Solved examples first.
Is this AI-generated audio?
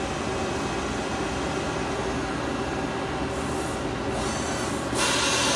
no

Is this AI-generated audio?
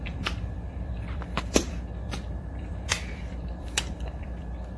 yes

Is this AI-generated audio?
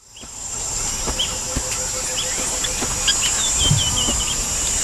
no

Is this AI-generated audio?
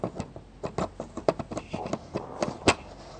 no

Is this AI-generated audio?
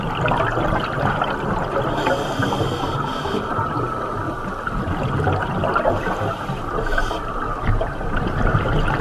no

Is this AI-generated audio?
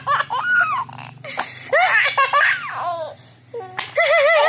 no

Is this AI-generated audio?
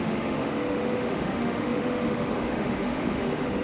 yes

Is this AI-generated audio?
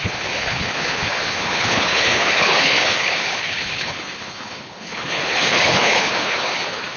yes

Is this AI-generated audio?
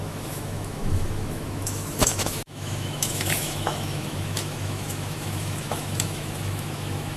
yes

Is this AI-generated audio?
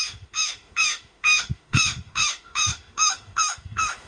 yes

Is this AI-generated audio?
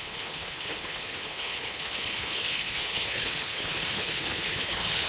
yes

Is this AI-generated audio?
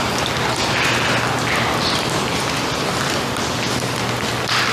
no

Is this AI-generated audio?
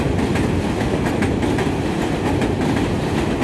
no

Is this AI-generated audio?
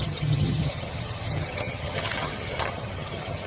yes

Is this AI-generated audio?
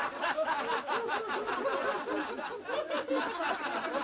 no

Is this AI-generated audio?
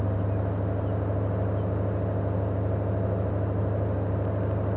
no